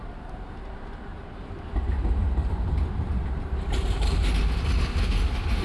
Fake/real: real